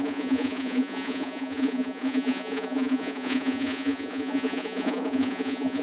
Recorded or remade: remade